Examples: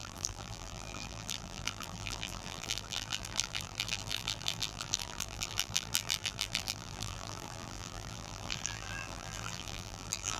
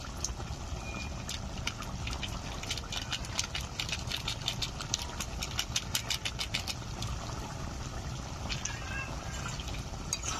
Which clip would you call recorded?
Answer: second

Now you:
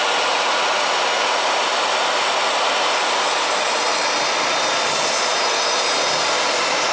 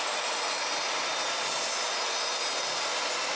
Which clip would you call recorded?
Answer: second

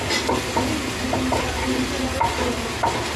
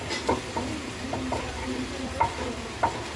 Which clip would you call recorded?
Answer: first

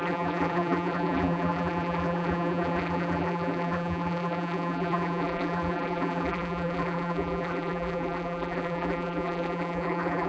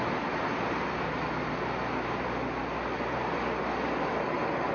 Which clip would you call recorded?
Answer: second